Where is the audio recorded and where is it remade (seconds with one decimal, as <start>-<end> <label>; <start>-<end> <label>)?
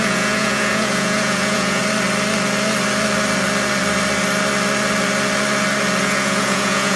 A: 0.0-1.8 remade; 1.8-6.0 recorded; 6.0-7.0 remade